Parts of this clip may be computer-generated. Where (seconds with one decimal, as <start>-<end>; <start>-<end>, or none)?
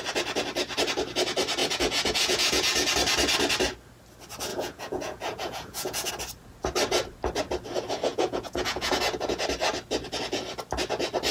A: 1.6-2.9; 4.5-6.1; 8.1-9.0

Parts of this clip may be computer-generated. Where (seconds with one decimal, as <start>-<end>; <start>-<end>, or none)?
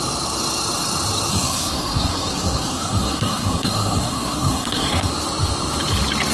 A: 1.3-5.1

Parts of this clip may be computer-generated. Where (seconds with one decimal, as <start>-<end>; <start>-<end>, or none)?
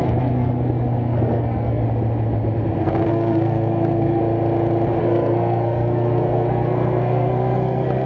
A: 0.0-1.8; 2.8-4.2; 5.0-8.1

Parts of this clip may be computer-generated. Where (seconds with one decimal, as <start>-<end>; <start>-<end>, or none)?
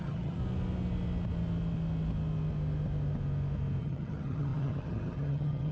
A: 0.0-0.4; 3.8-5.7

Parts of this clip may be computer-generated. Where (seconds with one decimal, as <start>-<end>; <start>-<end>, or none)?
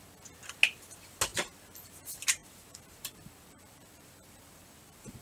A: 1.3-1.9; 2.4-5.2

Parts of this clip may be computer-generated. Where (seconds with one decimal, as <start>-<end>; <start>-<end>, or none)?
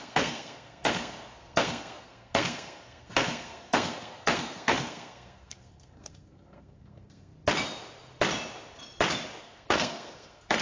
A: 0.0-7.3; 9.4-10.6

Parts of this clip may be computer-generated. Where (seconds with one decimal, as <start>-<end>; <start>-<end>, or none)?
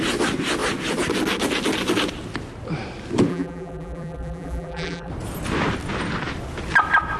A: 3.3-5.1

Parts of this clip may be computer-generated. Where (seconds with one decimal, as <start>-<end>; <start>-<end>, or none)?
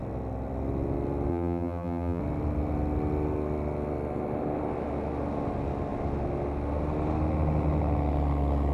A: 1.3-2.2